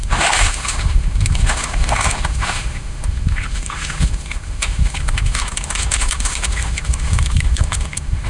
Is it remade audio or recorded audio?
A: remade